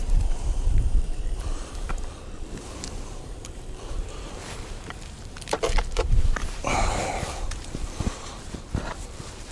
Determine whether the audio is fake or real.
fake